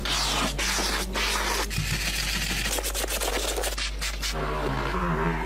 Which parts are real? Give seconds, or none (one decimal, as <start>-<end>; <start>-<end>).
0.0-5.5